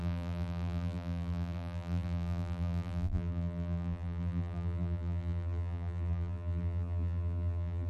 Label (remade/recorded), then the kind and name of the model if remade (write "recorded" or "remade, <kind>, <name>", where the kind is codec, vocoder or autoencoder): remade, vocoder, BigVGAN v2